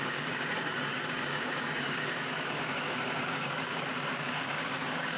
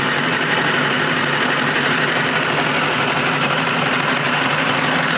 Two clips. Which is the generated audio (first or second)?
first